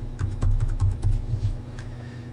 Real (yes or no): no